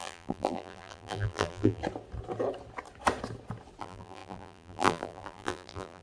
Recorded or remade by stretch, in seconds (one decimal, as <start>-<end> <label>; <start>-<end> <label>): 0.0-1.8 remade; 1.8-3.8 recorded; 3.8-6.0 remade